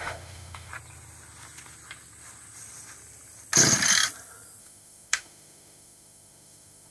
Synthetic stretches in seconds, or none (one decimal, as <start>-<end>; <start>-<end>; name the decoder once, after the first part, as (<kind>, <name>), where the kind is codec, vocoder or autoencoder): 0.0-0.7 (autoencoder, DAC-VAE); 4.6-6.9